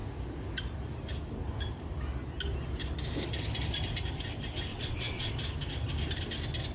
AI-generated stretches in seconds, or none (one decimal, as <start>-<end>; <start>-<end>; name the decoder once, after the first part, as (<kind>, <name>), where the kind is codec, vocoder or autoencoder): 4.7-5.3 (vocoder, WaveNeXt)